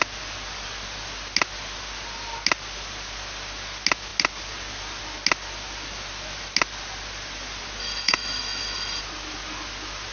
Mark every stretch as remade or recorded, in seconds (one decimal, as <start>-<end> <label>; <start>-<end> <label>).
0.0-7.8 recorded; 7.8-9.0 remade; 9.0-10.1 recorded